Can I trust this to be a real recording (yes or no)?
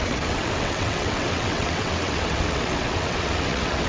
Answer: no